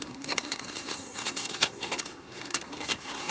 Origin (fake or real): fake